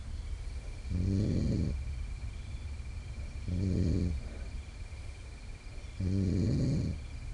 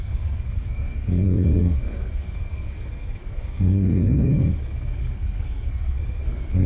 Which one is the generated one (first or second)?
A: second